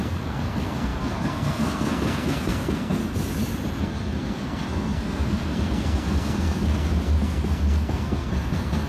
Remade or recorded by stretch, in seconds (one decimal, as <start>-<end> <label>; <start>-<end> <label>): 0.0-3.0 remade; 3.0-3.8 recorded; 3.8-8.9 remade